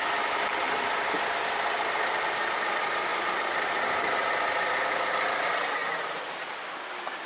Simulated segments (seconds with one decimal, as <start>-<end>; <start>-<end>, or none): 3.1-3.7